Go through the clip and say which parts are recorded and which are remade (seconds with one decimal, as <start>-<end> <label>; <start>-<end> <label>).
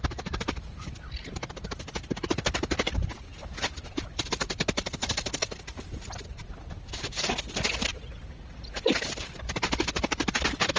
0.0-10.8 recorded